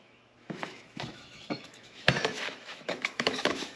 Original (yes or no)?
no